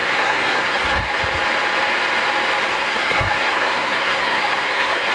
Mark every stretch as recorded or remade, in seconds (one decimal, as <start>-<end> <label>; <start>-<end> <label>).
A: 0.0-1.2 remade; 1.2-2.7 recorded; 2.7-5.1 remade